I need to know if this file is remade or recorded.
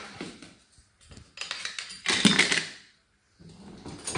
recorded